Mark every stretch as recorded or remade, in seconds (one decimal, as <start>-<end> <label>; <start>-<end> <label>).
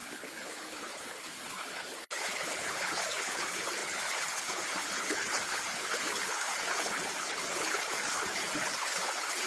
0.0-9.5 remade